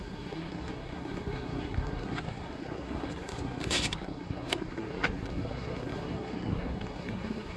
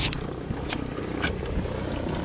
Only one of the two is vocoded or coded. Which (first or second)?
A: first